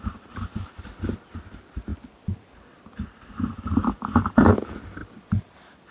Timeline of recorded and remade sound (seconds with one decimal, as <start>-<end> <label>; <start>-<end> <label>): 0.0-1.9 recorded; 1.9-3.3 remade; 3.3-5.0 recorded; 5.0-5.9 remade